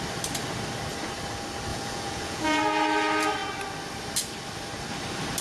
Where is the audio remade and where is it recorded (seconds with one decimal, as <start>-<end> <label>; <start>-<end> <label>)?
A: 0.0-1.7 recorded; 1.7-2.6 remade; 2.6-5.4 recorded